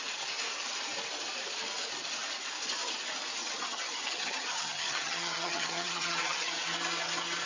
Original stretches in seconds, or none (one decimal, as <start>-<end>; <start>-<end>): 0.0-3.4; 6.5-7.5